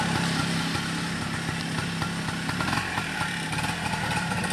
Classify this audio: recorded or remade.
recorded